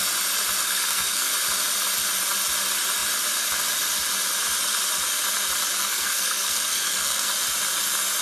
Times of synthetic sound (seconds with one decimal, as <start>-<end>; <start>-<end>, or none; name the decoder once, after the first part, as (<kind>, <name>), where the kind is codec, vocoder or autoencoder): 0.6-1.3 (codec, SNAC); 5.8-7.3

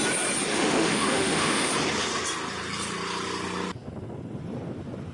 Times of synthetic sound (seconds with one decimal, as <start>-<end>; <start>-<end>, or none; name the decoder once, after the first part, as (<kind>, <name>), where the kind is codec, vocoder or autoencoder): 0.5-1.7 (autoencoder, DAC-VAE)

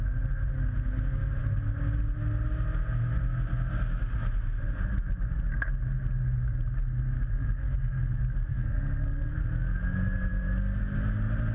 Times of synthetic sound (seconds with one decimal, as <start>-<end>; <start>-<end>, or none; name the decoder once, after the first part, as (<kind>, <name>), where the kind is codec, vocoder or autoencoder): 7.3-8.0 (codec, SNAC); 8.5-9.3

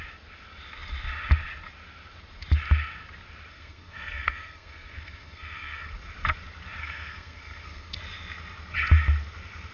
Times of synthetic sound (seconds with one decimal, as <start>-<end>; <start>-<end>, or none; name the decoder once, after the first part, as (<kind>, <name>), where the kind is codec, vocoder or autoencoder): 3.5-5.9 (codec, SNAC); 6.8-8.0

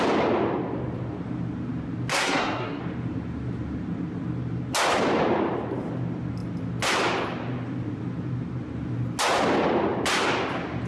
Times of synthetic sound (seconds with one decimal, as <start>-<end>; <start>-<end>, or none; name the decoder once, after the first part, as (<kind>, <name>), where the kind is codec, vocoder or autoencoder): 2.1-2.8 (codec, SNAC)

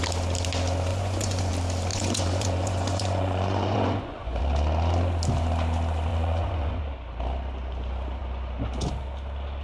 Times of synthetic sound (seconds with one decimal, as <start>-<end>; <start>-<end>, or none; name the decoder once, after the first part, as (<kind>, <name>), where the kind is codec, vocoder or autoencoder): 0.9-1.5 (vocoder, Vocos); 1.9-4.4; 6.1-6.8